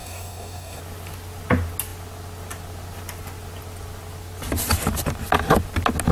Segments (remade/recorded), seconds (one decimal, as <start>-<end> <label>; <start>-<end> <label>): 0.0-0.8 remade; 0.8-6.1 recorded